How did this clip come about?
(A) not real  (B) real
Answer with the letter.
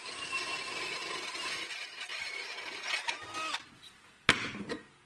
B